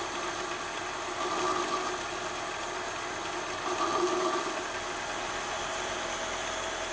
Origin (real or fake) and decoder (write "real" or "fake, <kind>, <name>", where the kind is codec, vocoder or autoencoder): real